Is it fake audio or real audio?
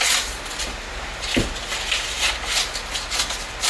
real